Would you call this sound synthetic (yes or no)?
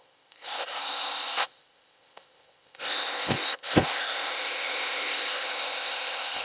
yes